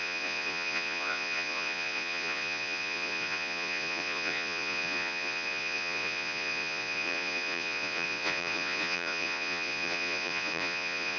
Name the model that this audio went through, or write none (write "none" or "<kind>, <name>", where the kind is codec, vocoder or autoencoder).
vocoder, Vocos